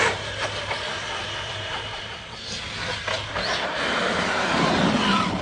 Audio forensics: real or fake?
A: fake